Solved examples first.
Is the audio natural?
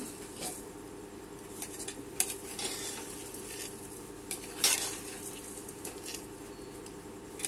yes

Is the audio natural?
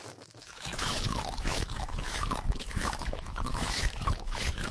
no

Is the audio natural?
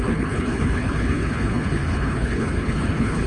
no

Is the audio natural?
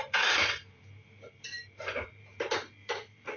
no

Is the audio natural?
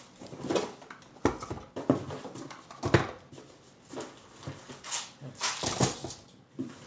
yes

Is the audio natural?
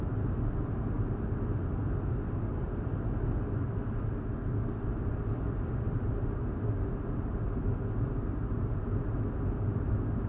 yes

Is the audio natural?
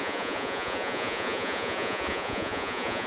no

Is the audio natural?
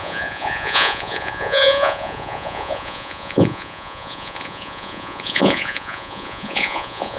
no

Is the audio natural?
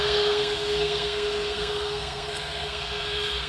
no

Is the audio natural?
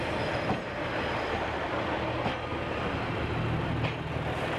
yes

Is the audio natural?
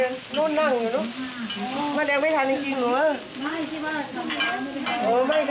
yes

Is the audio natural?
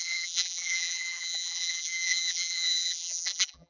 no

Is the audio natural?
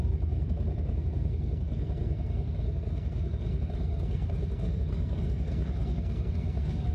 no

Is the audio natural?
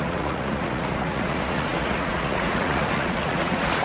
no